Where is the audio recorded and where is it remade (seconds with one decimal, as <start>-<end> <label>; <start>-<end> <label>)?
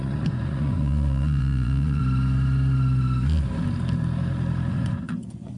0.0-2.0 remade; 2.0-4.7 recorded; 4.7-5.6 remade